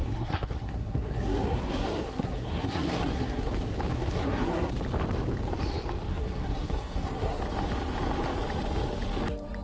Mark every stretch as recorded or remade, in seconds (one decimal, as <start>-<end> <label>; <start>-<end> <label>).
0.0-3.5 remade; 3.5-3.9 recorded; 3.9-4.7 remade; 4.7-6.1 recorded; 6.1-7.4 remade; 7.4-9.6 recorded